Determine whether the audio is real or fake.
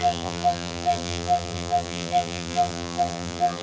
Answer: fake